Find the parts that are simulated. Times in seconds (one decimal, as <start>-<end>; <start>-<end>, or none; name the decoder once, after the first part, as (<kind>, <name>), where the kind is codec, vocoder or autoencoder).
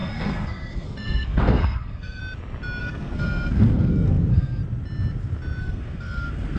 0.0-2.2 (codec, SNAC); 2.8-4.6; 5.6-6.6